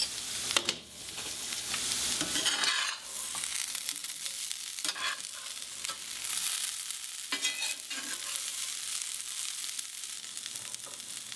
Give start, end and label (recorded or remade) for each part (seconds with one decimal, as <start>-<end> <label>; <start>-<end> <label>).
0.0-0.6 recorded; 0.6-1.7 remade; 1.7-11.4 recorded